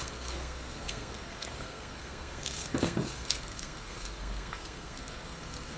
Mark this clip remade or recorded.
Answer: remade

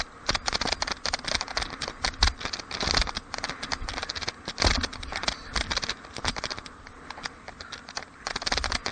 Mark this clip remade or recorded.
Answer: recorded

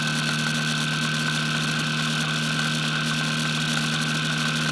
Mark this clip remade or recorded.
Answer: recorded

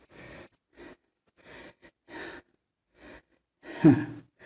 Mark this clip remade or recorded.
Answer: recorded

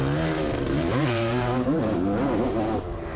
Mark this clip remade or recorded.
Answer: remade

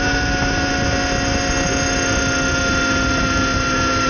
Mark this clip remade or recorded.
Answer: recorded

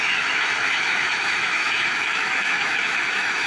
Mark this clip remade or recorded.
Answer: remade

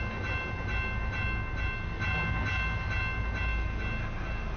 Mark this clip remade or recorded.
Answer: recorded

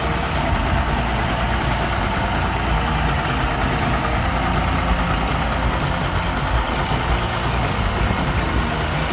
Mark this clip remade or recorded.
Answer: recorded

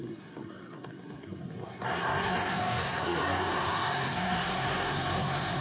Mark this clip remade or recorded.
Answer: remade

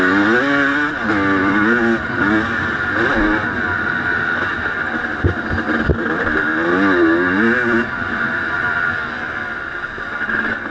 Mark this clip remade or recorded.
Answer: recorded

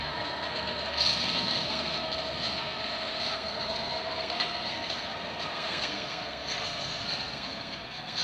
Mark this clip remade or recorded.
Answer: remade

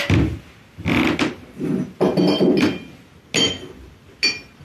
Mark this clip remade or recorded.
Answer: recorded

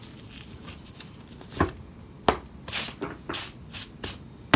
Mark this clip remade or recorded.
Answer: recorded